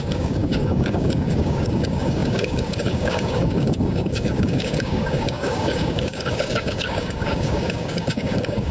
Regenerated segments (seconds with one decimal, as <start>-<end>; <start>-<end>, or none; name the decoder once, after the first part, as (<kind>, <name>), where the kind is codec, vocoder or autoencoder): 0.0-8.7 (codec, DAC)